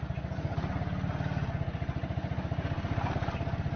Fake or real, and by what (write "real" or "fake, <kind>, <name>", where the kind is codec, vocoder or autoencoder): real